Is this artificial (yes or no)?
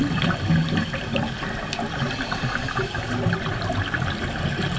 no